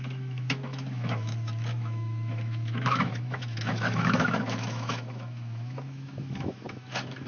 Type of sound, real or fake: fake